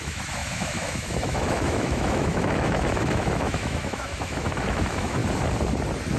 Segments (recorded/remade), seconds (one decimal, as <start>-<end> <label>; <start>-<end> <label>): 0.0-5.2 remade; 5.2-6.2 recorded